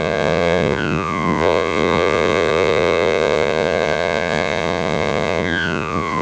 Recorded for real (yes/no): no